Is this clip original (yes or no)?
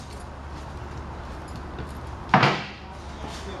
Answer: yes